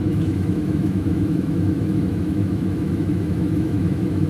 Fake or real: fake